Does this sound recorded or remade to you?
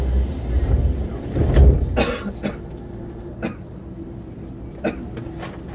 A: recorded